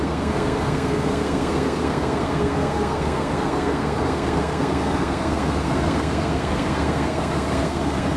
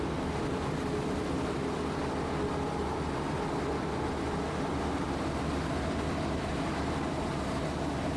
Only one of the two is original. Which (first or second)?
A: second